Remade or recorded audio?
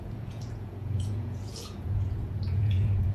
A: remade